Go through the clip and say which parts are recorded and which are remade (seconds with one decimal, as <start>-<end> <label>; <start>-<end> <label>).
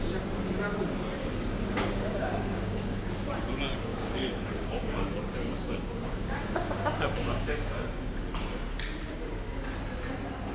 0.0-1.2 recorded; 1.2-3.0 remade; 3.0-3.9 recorded; 3.9-8.2 remade; 8.2-9.1 recorded; 9.1-9.8 remade; 9.8-10.5 recorded